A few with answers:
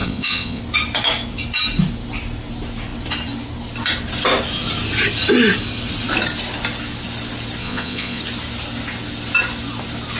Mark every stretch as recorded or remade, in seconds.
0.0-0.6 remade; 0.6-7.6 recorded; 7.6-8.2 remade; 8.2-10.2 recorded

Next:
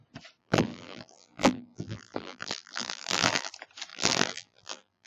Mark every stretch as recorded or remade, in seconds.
0.0-0.4 recorded; 0.4-3.5 remade; 3.5-3.9 recorded; 3.9-5.1 remade

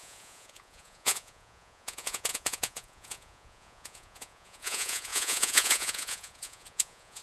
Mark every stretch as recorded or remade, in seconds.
0.0-7.2 remade

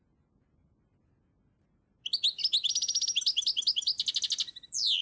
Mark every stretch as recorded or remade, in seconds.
0.0-5.0 recorded